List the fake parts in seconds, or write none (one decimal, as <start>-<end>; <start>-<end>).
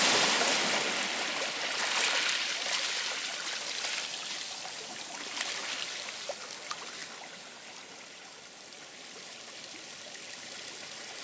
none